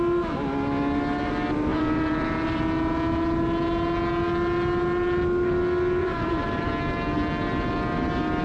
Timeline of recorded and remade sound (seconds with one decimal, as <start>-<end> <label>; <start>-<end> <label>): 0.0-1.7 recorded; 1.7-2.6 remade; 2.6-6.0 recorded; 6.0-6.7 remade; 6.7-8.4 recorded